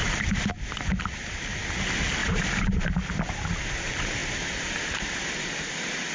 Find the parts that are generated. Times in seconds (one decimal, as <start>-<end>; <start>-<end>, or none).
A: 0.0-0.5; 2.2-2.8; 4.2-5.4